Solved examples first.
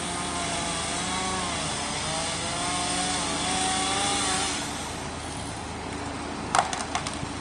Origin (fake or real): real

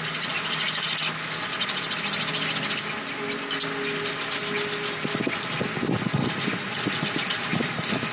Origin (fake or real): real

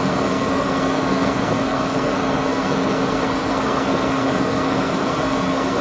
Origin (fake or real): fake